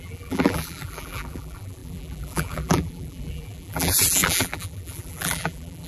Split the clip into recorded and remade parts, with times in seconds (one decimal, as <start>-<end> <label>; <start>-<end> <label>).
0.0-5.9 remade